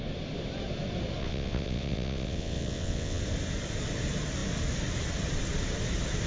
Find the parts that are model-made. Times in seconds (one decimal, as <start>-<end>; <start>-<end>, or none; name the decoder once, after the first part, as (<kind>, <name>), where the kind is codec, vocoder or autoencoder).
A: 1.2-3.2 (vocoder, WaveNeXt)